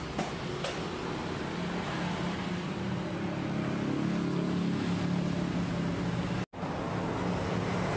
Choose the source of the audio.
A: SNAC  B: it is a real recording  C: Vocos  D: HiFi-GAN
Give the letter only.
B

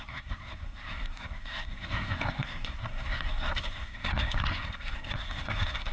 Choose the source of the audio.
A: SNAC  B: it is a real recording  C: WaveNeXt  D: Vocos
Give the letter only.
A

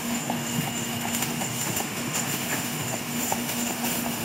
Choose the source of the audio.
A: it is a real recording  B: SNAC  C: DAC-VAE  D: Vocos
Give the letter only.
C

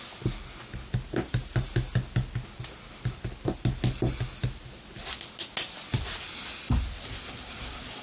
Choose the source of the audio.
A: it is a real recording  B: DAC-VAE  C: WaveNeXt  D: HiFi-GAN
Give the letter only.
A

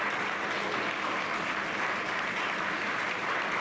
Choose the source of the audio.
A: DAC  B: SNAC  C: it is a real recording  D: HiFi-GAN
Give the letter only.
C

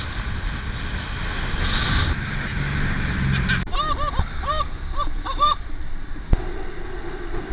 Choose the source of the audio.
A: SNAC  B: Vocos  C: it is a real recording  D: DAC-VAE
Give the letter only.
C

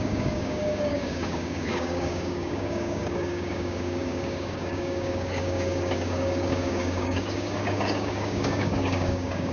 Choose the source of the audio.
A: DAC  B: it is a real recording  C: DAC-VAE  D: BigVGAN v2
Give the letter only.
A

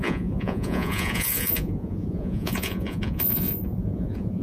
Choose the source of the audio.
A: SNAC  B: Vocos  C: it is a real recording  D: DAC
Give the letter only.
B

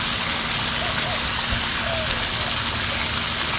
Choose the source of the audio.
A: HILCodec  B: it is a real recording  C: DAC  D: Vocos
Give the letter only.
B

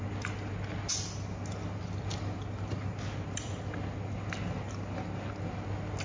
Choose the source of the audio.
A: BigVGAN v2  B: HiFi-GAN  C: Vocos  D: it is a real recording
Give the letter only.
D